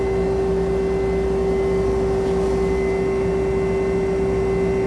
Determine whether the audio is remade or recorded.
recorded